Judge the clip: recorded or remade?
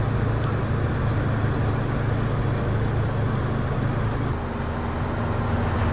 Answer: recorded